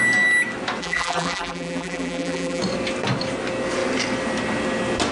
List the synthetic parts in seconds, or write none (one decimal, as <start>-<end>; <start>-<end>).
0.8-2.6

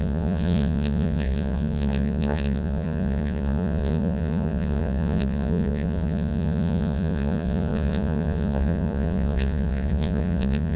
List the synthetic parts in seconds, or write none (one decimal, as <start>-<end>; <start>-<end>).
0.0-10.8

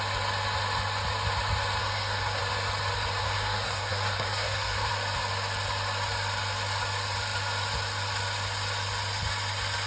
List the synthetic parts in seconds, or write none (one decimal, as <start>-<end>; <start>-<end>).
1.8-2.4; 3.2-4.9